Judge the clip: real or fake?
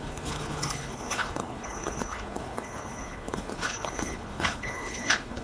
fake